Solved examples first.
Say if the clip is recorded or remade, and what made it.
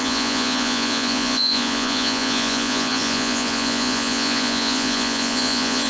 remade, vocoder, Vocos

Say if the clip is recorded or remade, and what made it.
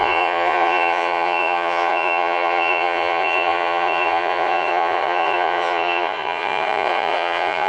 remade, vocoder, Vocos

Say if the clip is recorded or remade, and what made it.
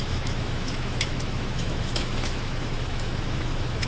remade, autoencoder, DAC-VAE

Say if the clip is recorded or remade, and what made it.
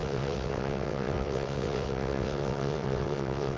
remade, vocoder, WaveNeXt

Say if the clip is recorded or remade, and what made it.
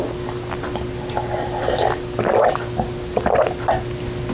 recorded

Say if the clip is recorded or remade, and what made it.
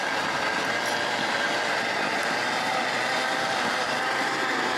recorded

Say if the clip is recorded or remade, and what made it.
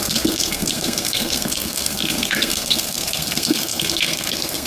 remade, codec, SNAC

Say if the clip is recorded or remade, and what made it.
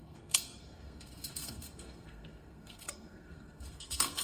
remade, codec, SNAC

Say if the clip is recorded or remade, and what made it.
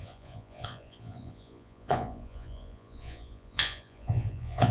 remade, vocoder, Vocos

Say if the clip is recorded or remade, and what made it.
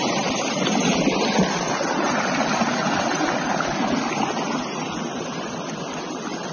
recorded